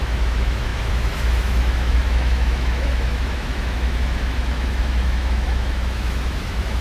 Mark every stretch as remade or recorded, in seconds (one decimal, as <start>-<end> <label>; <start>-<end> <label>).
0.0-6.8 remade